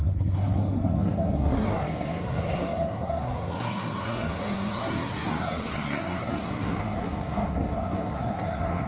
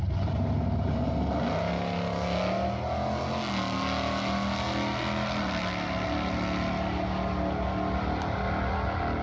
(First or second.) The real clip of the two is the second